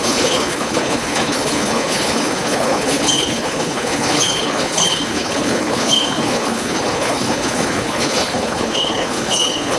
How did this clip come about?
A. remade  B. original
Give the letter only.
A